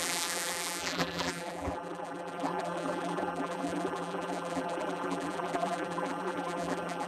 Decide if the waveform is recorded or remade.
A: remade